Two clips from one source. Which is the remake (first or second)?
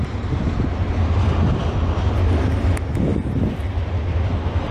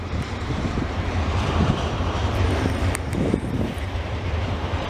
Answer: second